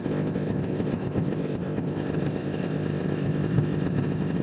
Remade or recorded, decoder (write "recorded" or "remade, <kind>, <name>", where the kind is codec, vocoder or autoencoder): remade, codec, ZipCodec